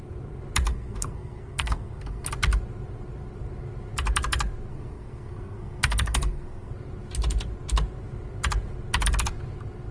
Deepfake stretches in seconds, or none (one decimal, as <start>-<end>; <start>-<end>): 0.7-2.3; 4.7-6.7